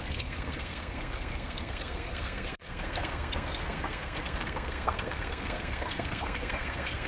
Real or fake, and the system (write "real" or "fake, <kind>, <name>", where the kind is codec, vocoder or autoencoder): fake, codec, SNAC